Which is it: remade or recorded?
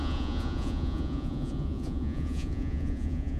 remade